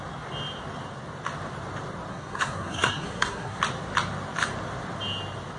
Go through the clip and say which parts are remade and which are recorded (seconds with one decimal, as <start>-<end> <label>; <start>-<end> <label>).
0.0-2.1 recorded; 2.1-3.6 remade; 3.6-5.6 recorded